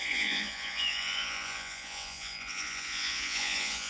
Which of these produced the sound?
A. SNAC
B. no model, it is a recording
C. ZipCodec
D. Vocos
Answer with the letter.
D